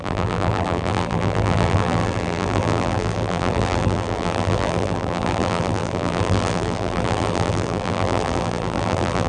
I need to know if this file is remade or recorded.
remade